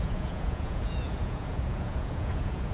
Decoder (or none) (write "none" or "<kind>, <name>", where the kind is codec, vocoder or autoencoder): vocoder, Vocos